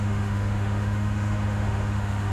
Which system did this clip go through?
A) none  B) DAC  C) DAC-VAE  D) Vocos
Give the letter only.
C